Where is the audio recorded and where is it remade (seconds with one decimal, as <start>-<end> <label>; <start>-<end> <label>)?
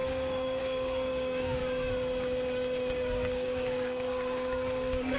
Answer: 0.0-1.6 remade; 1.6-2.9 recorded; 2.9-5.2 remade